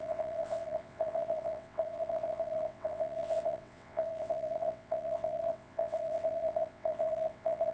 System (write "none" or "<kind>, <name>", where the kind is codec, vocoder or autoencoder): vocoder, WaveNeXt